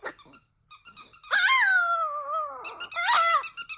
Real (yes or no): yes